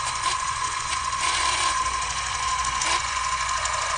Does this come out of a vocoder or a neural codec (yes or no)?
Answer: yes